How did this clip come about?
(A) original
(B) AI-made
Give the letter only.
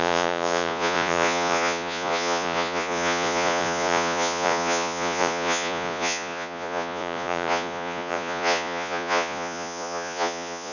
B